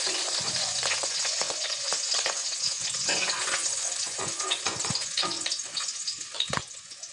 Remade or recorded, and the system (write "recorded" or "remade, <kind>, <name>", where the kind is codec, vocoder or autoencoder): remade, vocoder, Vocos